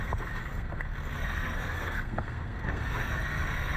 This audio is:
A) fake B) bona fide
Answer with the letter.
A